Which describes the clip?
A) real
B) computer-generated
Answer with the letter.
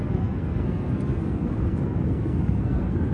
B